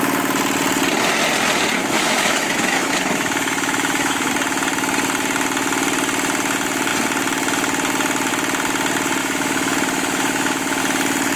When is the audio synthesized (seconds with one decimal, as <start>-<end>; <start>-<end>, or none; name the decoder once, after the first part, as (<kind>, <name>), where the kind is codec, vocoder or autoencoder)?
1.8-4.3 (autoencoder, DAC-VAE); 9.2-10.8

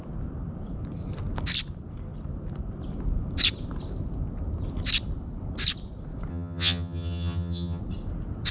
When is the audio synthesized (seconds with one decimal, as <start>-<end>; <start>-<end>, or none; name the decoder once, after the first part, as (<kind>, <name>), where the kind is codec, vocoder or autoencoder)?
6.3-7.8 (vocoder, HiFi-GAN)

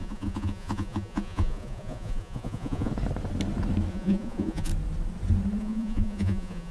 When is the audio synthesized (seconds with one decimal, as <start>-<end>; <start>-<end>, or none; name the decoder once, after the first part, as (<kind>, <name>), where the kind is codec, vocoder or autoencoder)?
0.0-2.9 (vocoder, Vocos); 3.9-4.7; 5.6-6.7

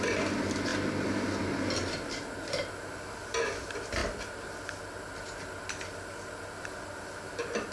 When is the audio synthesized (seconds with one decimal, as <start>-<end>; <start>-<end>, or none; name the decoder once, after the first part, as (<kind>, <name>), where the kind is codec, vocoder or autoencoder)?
none